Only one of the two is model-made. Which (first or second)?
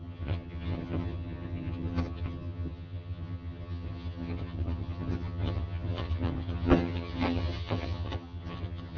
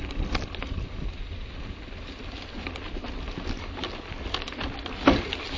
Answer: first